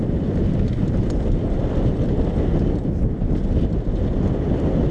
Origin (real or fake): real